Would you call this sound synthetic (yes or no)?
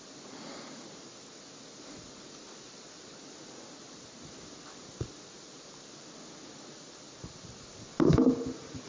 no